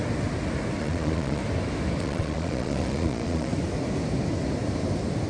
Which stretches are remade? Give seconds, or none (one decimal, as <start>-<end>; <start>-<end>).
0.8-1.4; 2.0-3.5